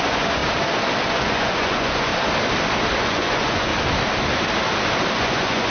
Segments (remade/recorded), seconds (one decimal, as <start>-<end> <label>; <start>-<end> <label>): 0.0-0.4 remade; 0.4-1.1 recorded; 1.1-2.1 remade; 2.1-3.0 recorded; 3.0-3.7 remade; 3.7-5.1 recorded; 5.1-5.7 remade